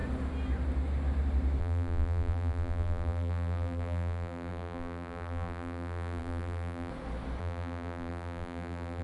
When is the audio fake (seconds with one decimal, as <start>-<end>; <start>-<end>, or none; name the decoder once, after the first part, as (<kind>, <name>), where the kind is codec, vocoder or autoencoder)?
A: 1.6-6.9 (vocoder, BigVGAN v2); 7.4-9.0